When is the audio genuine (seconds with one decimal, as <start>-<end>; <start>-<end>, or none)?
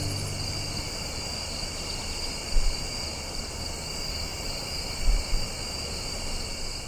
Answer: 0.0-4.3; 5.6-6.9